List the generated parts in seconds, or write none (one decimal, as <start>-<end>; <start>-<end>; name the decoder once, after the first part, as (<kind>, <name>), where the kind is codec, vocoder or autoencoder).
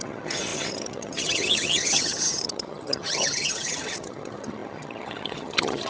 0.0-5.9 (vocoder, HiFi-GAN)